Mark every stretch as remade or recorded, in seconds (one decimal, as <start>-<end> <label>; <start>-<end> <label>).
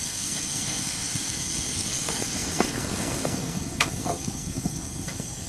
0.0-5.5 remade